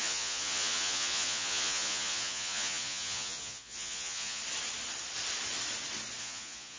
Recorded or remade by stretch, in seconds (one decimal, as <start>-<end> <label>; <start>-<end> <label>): 0.0-4.4 remade; 4.4-6.2 recorded; 6.2-6.8 remade